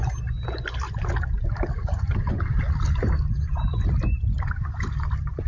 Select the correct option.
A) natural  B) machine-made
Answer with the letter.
A